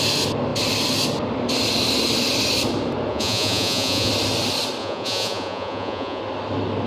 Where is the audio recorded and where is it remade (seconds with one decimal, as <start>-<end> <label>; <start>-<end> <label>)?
0.0-3.1 recorded; 3.1-4.1 remade; 4.1-4.8 recorded; 4.8-6.2 remade; 6.2-6.9 recorded